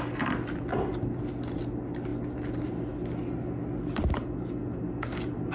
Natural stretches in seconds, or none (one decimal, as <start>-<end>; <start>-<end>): 0.0-5.5